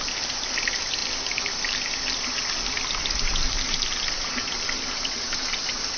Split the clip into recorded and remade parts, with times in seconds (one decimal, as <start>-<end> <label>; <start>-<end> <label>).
0.0-6.0 recorded